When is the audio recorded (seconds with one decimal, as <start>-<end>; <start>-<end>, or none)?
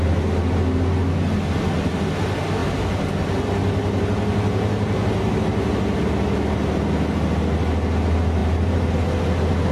0.0-8.4; 8.9-9.7